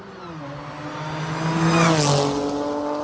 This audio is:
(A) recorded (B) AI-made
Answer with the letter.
A